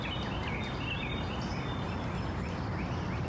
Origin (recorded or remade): recorded